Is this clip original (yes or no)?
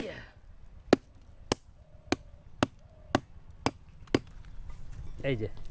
yes